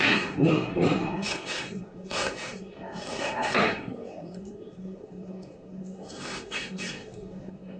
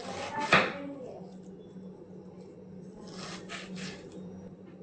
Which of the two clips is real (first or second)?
second